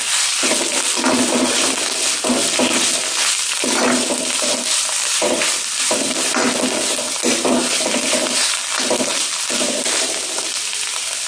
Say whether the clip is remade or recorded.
recorded